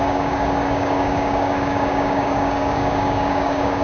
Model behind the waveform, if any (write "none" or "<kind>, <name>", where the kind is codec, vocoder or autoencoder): codec, DAC